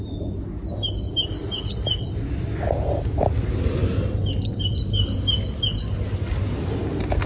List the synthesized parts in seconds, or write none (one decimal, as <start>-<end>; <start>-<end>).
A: none